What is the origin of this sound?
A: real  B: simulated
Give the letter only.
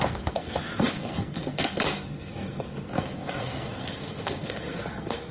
B